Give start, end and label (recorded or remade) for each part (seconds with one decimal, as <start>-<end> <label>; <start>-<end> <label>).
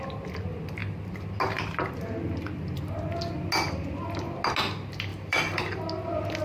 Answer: 0.0-5.1 recorded; 5.1-5.8 remade; 5.8-6.4 recorded